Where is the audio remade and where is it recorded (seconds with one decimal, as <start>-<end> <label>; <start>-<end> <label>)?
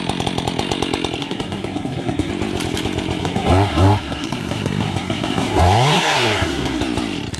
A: 0.0-1.2 recorded; 1.2-2.3 remade; 2.3-3.2 recorded; 3.2-6.8 remade; 6.8-7.4 recorded